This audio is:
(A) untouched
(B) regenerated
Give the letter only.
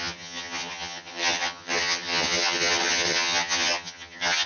B